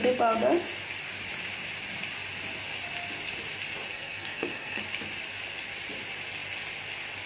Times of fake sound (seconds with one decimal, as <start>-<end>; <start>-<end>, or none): 3.9-4.8